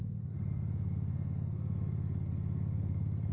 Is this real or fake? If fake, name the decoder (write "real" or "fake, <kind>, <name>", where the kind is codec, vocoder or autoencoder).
fake, codec, SNAC